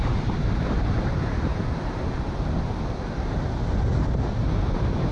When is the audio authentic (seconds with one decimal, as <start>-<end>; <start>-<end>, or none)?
1.5-3.7